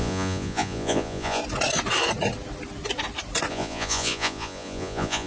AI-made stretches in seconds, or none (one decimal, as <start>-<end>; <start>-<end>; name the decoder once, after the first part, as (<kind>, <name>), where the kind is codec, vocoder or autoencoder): 0.0-1.4 (vocoder, Vocos); 3.5-5.3